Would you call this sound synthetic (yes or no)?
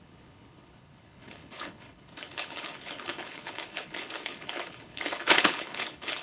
yes